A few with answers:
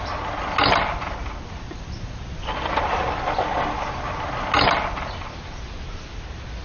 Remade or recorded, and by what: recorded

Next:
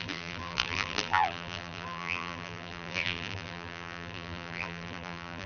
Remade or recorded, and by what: remade, vocoder, BigVGAN v2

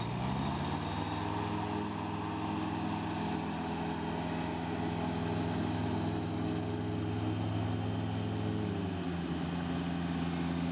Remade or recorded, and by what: recorded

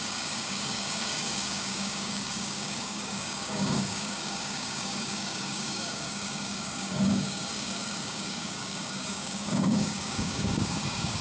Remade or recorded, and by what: remade, codec, DAC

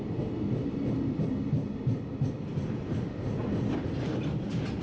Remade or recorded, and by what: recorded